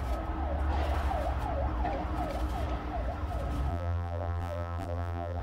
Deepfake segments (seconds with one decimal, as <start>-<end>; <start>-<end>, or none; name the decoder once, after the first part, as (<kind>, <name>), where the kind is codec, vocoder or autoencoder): 3.7-5.4 (vocoder, BigVGAN v2)